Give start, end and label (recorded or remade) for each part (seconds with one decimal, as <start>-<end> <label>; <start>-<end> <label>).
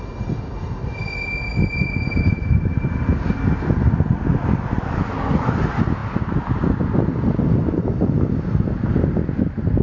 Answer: 0.0-9.8 recorded